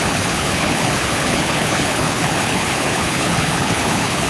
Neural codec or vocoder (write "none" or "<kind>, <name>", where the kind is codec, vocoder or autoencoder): codec, HILCodec